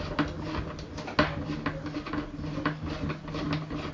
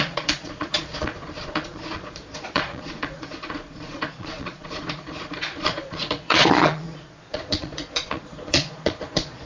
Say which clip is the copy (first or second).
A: second